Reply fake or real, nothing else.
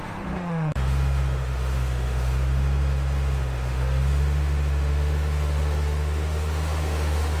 fake